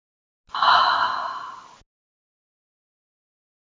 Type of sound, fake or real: real